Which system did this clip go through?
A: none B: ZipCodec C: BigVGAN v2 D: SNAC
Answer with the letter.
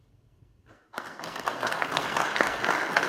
D